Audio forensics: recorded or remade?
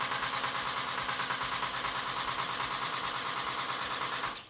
recorded